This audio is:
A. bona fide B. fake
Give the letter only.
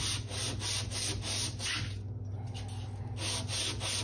A